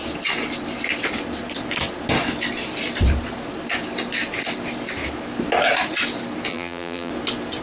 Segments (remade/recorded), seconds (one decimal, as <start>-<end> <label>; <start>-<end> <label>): 0.0-6.5 recorded; 6.5-7.1 remade; 7.1-7.6 recorded